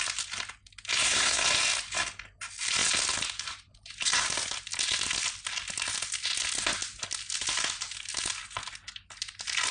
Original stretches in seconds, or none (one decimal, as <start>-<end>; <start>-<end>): 0.0-0.9; 1.4-9.7